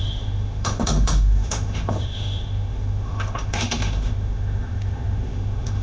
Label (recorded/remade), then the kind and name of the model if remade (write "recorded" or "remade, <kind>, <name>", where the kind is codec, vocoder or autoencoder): remade, autoencoder, DAC-VAE